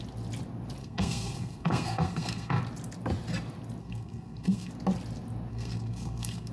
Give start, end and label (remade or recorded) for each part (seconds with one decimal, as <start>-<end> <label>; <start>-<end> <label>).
0.0-0.8 recorded; 0.8-2.6 remade; 2.6-3.8 recorded; 3.8-4.7 remade; 4.7-5.5 recorded; 5.5-6.5 remade